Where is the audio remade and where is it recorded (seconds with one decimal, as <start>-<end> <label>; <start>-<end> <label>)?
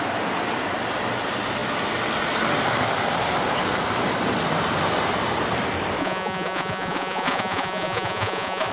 0.0-6.0 recorded; 6.0-8.7 remade